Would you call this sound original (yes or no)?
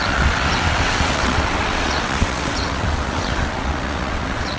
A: no